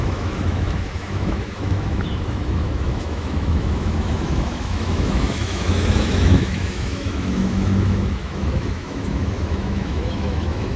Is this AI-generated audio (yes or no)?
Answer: yes